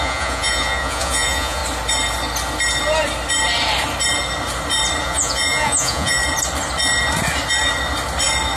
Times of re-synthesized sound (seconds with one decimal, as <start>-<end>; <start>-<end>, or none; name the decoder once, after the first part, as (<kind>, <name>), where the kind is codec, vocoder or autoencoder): 0.0-1.6 (vocoder, Vocos); 5.0-6.2